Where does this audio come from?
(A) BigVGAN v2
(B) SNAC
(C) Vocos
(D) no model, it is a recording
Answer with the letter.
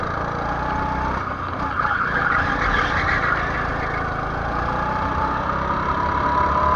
D